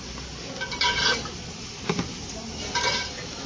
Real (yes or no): yes